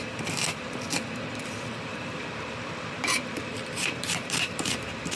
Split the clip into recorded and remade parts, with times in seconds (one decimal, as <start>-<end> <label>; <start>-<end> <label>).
0.0-1.9 recorded; 1.9-5.2 remade

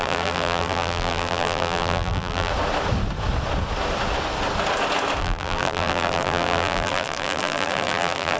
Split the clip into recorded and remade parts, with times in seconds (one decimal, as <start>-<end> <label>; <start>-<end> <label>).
0.0-2.5 remade; 2.5-5.2 recorded; 5.2-8.4 remade

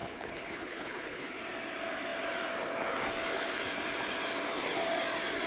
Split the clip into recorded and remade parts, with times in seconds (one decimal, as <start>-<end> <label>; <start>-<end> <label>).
0.0-1.3 remade; 1.3-5.5 recorded

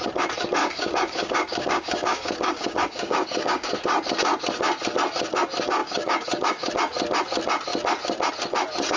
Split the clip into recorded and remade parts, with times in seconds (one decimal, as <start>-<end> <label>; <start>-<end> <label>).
0.0-0.6 recorded; 0.6-3.7 remade; 3.7-5.8 recorded; 5.8-6.7 remade; 6.7-9.0 recorded